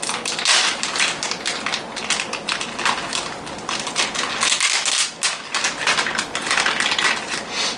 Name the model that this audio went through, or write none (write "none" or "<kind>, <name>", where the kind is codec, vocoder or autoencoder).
none